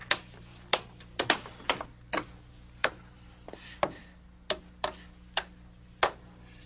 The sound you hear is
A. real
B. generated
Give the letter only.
A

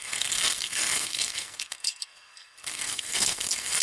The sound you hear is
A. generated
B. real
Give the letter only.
A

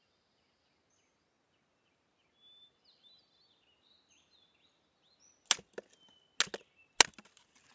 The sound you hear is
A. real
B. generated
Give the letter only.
A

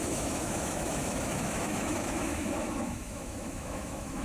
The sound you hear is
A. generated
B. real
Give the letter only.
A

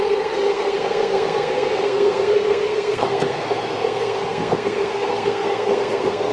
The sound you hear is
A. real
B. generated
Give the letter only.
B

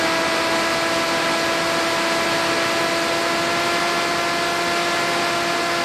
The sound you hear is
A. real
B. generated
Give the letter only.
A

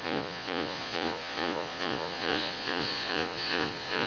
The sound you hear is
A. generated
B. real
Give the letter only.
A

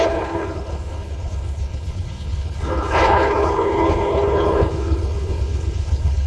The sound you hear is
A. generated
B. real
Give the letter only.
A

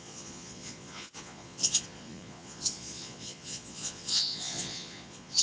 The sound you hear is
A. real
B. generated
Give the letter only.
B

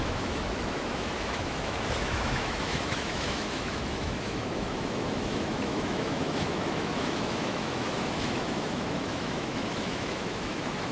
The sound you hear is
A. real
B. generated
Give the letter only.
B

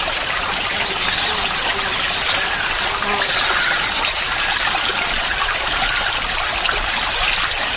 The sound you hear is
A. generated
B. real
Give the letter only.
B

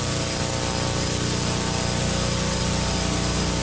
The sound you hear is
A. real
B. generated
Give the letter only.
A